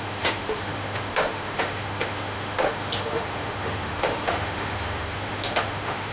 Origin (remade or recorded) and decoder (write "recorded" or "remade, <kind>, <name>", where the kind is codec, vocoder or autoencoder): remade, autoencoder, DAC-VAE